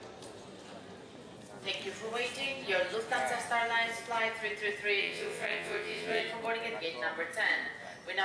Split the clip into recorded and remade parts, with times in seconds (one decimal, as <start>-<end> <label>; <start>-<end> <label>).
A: 0.0-5.0 recorded; 5.0-6.2 remade; 6.2-8.2 recorded